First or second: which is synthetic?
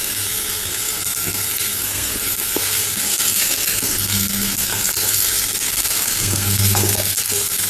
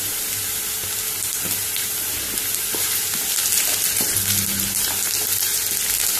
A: first